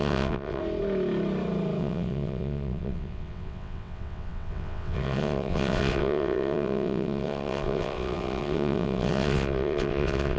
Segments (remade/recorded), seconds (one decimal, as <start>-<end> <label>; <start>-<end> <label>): 0.0-0.6 remade; 0.6-1.8 recorded; 1.8-10.4 remade

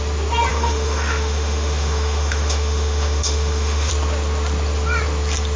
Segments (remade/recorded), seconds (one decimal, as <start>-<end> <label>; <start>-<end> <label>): 0.0-0.5 recorded; 0.5-3.9 remade; 3.9-5.6 recorded